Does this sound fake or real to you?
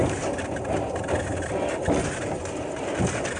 real